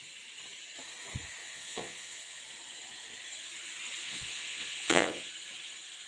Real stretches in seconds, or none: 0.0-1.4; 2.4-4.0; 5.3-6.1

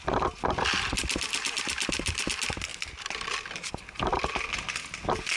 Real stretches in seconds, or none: 0.0-5.4

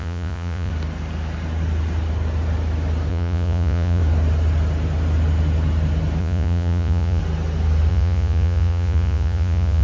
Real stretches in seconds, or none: 0.7-3.1; 4.0-6.2; 7.2-7.9